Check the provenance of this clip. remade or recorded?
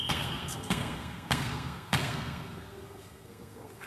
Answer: remade